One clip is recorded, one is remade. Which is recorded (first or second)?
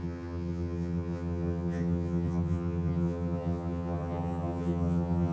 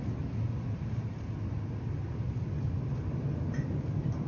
second